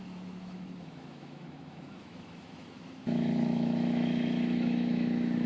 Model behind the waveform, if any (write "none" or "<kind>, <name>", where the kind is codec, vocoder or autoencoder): autoencoder, DAC-VAE